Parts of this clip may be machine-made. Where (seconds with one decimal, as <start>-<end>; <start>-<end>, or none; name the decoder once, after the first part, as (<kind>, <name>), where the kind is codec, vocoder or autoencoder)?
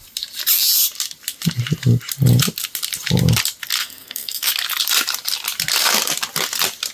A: 3.8-4.5 (codec, SNAC)